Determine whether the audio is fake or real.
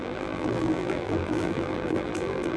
fake